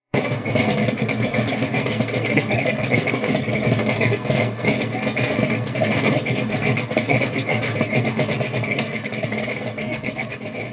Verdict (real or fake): fake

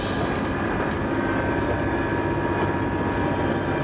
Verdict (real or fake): real